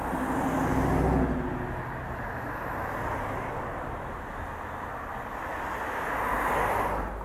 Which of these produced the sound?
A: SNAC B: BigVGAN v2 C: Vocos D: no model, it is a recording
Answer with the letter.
D